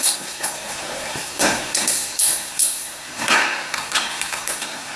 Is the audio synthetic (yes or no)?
yes